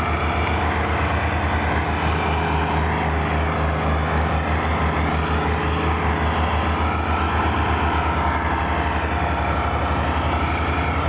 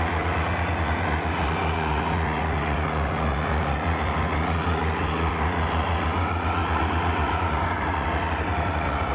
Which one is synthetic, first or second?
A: second